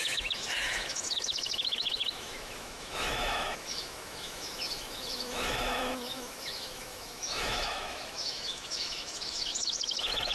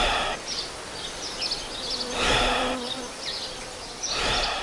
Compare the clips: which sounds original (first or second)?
second